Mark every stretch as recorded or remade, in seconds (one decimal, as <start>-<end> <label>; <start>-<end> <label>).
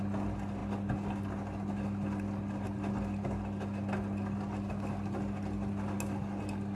0.0-6.8 recorded